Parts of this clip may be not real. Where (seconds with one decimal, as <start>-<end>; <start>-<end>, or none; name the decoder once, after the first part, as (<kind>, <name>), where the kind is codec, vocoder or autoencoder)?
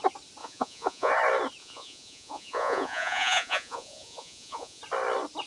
0.4-1.1 (vocoder, Vocos); 1.6-4.8